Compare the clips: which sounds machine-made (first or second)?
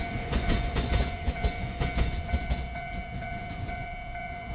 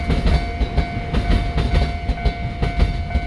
first